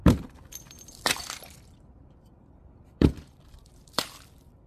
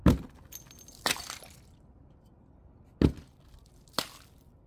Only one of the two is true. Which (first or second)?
second